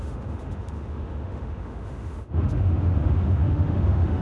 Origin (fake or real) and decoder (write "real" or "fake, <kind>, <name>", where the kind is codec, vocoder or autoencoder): fake, autoencoder, DAC-VAE